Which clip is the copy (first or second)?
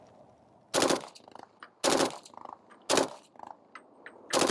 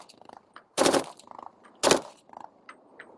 second